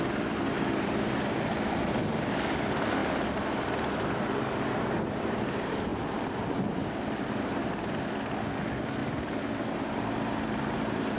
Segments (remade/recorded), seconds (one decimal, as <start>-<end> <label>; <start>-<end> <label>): 0.0-9.0 recorded; 9.0-11.2 remade